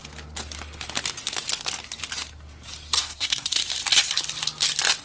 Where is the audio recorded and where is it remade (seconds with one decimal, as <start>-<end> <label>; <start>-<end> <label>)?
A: 0.0-3.0 recorded; 3.0-3.6 remade; 3.6-5.0 recorded